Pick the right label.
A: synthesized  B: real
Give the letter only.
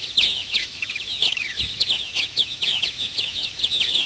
A